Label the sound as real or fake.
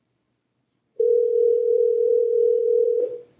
fake